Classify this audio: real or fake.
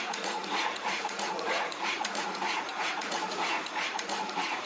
fake